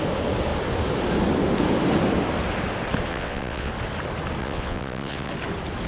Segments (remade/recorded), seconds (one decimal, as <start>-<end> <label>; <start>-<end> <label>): 0.0-3.1 recorded; 3.1-3.7 remade; 3.7-4.4 recorded; 4.4-5.3 remade; 5.3-5.9 recorded